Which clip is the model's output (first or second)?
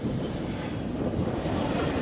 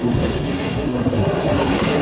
second